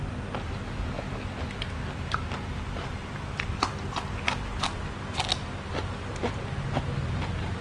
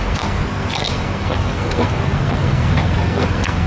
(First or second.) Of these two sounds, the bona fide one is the first